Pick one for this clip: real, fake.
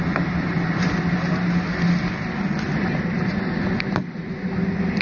real